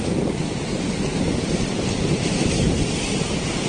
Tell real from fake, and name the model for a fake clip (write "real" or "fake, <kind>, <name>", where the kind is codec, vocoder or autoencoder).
real